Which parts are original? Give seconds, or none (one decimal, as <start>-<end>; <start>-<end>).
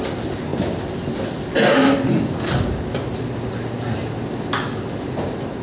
0.0-5.6